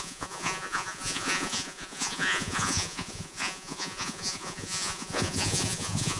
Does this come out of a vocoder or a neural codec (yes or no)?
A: yes